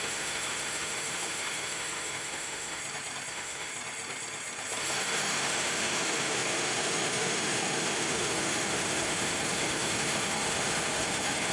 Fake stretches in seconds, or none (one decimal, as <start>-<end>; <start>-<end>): 0.0-2.8; 3.3-3.7; 4.8-11.5